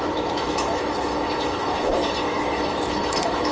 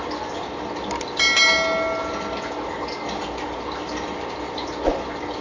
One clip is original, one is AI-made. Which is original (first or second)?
second